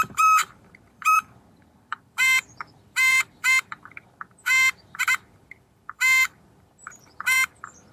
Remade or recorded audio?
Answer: remade